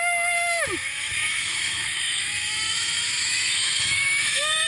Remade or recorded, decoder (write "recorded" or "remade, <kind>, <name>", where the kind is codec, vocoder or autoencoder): remade, autoencoder, DAC-VAE